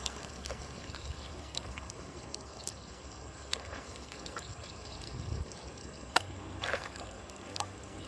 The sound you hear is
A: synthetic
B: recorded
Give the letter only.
A